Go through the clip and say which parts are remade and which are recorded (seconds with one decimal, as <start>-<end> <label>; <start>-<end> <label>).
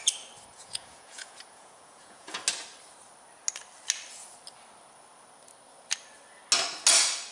0.0-0.5 recorded; 0.5-2.3 remade; 2.3-7.3 recorded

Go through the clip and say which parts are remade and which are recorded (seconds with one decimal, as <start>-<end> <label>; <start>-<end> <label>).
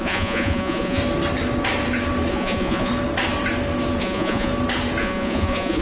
0.0-1.0 remade; 1.0-2.3 recorded; 2.3-2.9 remade; 2.9-4.0 recorded; 4.0-4.5 remade; 4.5-5.0 recorded; 5.0-5.8 remade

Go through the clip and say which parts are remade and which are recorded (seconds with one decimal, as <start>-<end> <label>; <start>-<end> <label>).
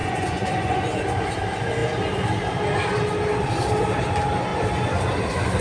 0.0-0.9 remade; 0.9-5.6 recorded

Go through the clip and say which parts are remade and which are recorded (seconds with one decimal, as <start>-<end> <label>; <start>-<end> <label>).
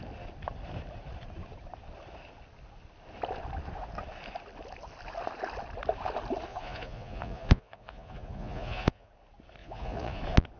0.0-6.5 recorded; 6.5-9.1 remade; 9.1-9.6 recorded; 9.6-10.2 remade; 10.2-10.6 recorded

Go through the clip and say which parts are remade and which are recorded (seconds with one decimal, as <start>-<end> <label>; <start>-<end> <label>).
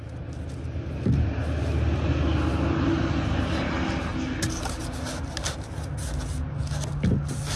0.0-7.6 recorded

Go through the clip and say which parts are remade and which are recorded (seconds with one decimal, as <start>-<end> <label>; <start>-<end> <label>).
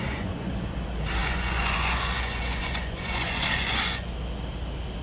0.0-0.5 remade; 0.5-1.2 recorded; 1.2-4.1 remade; 4.1-5.0 recorded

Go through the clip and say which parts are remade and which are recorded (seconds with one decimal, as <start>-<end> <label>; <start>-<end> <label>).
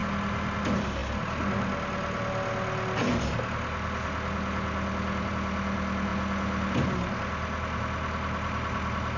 0.0-9.2 recorded